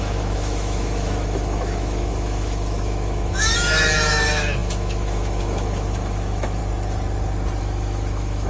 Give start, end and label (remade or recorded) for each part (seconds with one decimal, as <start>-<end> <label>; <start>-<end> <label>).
0.0-6.6 remade; 6.6-7.6 recorded; 7.6-8.5 remade